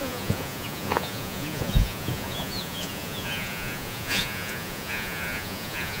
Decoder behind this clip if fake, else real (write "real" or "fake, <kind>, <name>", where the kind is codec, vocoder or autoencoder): fake, vocoder, Vocos